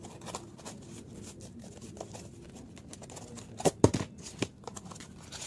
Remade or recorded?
recorded